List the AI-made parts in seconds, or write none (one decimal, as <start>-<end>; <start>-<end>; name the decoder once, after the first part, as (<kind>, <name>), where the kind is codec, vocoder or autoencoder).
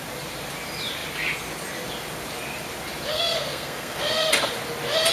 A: 3.1-4.3 (codec, SNAC)